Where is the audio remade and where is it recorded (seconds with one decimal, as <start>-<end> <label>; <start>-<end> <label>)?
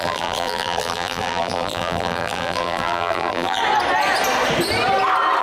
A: 0.0-3.6 remade; 3.6-5.4 recorded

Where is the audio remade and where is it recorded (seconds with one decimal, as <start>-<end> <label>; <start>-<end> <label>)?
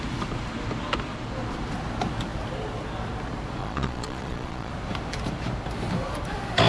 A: 0.0-3.6 recorded; 3.6-4.7 remade; 4.7-6.7 recorded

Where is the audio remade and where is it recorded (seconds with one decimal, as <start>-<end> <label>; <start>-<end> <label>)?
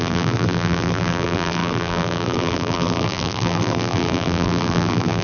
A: 0.0-5.2 remade